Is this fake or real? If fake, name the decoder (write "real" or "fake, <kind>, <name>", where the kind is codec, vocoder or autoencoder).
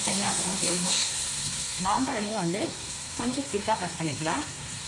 fake, codec, SNAC